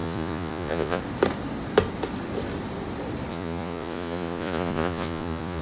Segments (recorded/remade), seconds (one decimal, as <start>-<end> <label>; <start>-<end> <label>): 0.0-1.0 remade; 1.0-3.3 recorded; 3.3-5.6 remade